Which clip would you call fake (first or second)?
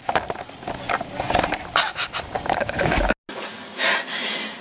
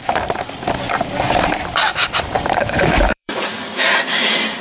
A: second